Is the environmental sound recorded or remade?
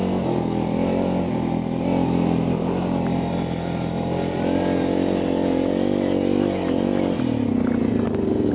recorded